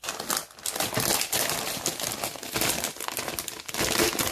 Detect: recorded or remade recorded